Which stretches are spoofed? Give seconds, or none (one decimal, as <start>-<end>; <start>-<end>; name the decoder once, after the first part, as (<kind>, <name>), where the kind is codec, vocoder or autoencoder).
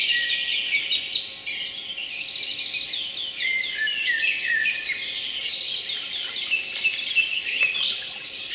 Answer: none